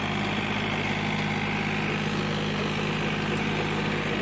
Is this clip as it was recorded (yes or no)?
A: yes